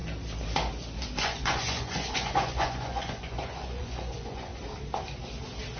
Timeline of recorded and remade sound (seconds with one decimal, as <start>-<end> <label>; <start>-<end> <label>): 0.0-1.2 recorded; 1.2-4.5 remade; 4.5-5.8 recorded